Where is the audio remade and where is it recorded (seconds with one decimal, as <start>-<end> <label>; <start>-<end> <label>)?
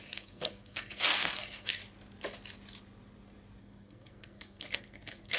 0.0-1.8 remade; 1.8-3.6 recorded; 3.6-5.4 remade